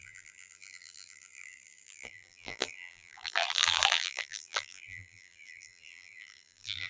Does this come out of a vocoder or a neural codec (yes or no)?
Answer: yes